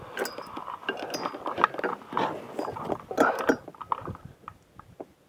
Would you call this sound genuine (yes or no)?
yes